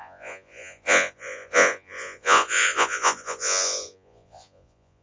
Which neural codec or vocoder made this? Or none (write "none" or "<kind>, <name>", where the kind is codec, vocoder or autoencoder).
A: vocoder, Vocos